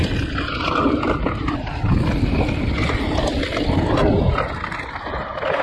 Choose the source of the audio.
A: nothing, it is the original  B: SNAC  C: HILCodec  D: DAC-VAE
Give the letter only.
A